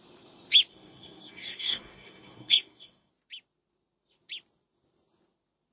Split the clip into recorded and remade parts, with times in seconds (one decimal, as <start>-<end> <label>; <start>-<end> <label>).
0.0-0.7 recorded; 0.7-3.1 remade; 3.1-5.7 recorded